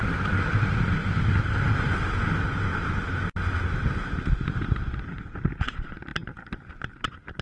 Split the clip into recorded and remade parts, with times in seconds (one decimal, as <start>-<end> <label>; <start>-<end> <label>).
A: 0.0-7.4 recorded